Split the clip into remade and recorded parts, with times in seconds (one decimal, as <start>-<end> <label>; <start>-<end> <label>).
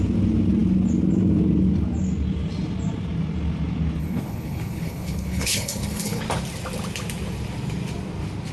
0.0-4.0 recorded; 4.0-6.2 remade; 6.2-8.5 recorded